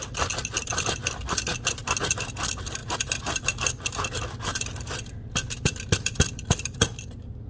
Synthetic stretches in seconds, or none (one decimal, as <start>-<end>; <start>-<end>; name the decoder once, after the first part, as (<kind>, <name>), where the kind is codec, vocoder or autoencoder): none